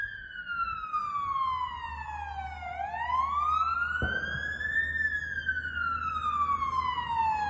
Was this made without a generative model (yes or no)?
yes